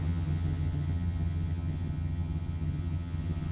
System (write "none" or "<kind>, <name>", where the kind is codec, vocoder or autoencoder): vocoder, HiFi-GAN